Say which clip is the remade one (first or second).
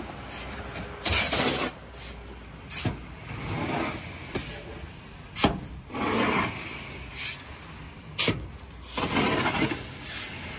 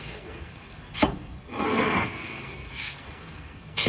second